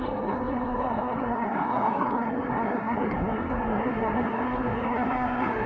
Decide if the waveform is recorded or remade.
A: remade